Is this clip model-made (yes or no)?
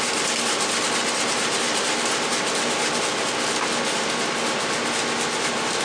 no